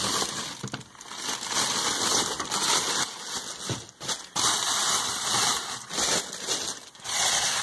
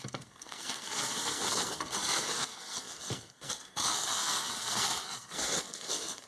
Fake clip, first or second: second